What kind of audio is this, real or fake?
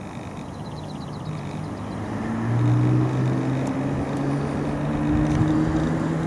real